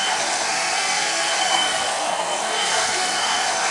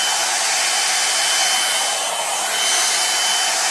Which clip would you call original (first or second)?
second